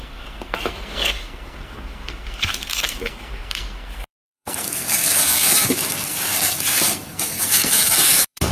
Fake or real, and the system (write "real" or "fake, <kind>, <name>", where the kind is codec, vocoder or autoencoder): fake, codec, SNAC